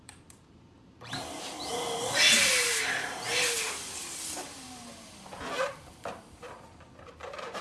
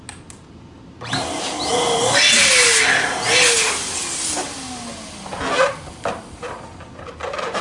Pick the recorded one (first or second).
second